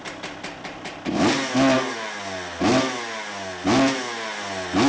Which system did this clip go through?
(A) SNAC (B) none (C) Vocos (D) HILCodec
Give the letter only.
B